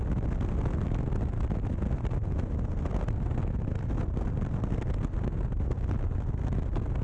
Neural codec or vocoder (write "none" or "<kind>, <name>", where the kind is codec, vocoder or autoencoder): none